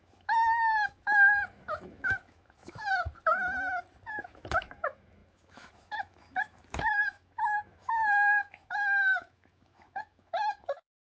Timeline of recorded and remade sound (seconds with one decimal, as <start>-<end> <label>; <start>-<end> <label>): 0.0-2.9 remade; 2.9-4.0 recorded; 4.0-11.0 remade